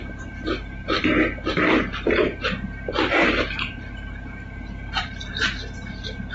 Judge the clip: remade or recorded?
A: remade